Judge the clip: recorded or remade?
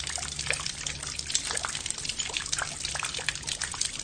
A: remade